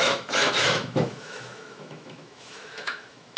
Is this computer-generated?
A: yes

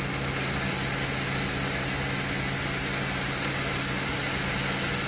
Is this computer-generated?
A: no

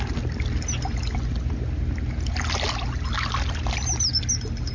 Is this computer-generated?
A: no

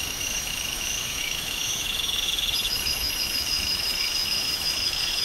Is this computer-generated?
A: yes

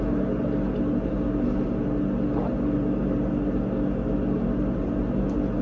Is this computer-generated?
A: no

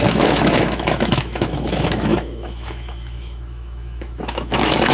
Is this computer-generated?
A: yes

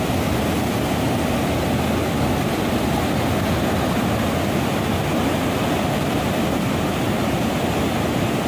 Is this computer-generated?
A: no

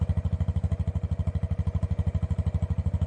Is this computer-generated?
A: no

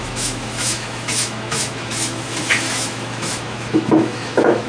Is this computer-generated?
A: yes